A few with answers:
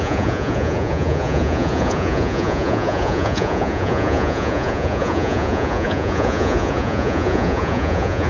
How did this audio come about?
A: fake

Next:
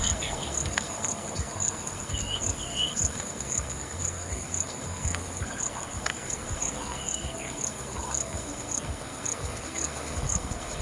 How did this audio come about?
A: fake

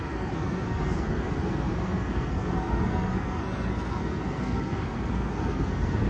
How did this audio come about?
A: fake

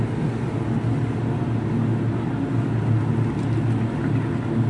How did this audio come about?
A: real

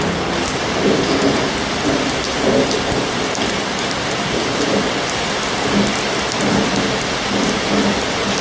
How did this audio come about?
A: real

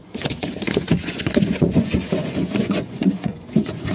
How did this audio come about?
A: fake